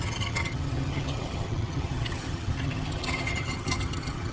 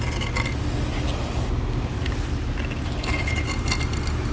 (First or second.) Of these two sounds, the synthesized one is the first